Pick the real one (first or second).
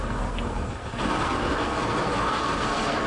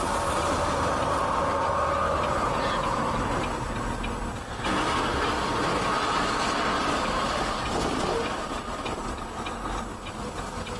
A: second